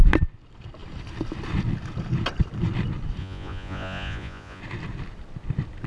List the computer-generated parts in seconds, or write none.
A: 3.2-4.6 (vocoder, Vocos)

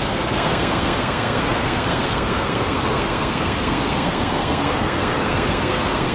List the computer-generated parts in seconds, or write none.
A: 0.0-6.1 (codec, SNAC)

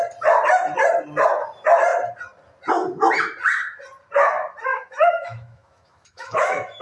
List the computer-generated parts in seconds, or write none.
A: 4.7-6.8 (autoencoder, DAC-VAE)